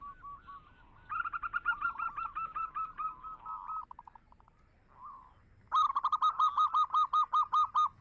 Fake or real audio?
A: real